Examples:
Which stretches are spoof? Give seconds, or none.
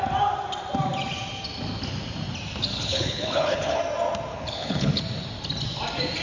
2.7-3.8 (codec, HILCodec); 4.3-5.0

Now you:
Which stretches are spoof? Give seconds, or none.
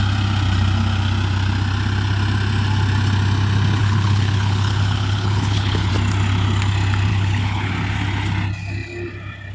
3.8-5.9 (codec, HILCodec); 7.1-7.7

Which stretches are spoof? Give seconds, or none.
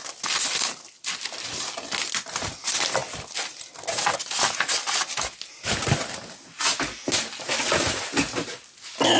none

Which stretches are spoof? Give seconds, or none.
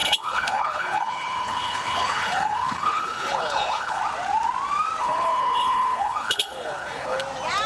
0.0-4.0 (codec, HILCodec); 5.0-7.2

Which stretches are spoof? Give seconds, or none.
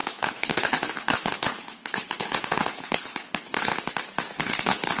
0.0-3.7 (codec, HILCodec); 4.4-5.0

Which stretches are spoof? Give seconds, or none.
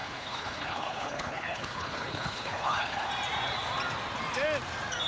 0.0-3.1 (codec, HILCodec)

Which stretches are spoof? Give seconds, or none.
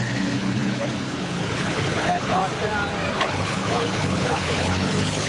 0.0-2.4 (codec, HILCodec); 3.1-5.3